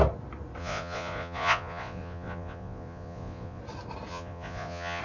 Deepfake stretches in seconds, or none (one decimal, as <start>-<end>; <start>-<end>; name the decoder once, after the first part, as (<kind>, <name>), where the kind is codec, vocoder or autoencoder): 0.6-3.6 (vocoder, Vocos); 4.1-5.0